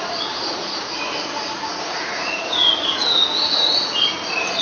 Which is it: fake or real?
fake